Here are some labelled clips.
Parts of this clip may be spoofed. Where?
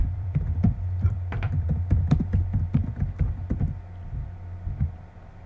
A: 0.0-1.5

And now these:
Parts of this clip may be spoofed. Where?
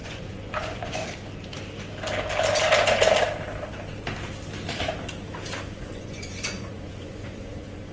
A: 0.0-1.0; 5.6-7.9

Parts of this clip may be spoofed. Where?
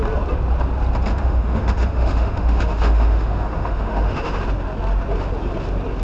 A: 1.1-4.4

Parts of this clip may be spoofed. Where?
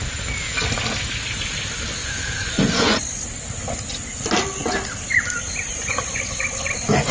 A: 2.0-3.0; 5.7-6.2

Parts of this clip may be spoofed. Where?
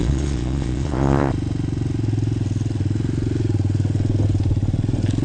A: 0.0-1.3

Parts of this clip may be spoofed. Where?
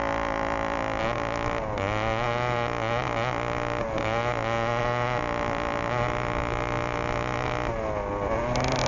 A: none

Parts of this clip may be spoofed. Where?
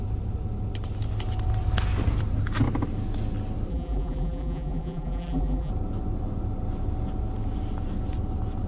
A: 3.7-5.7